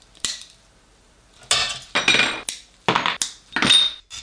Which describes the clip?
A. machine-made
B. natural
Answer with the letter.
B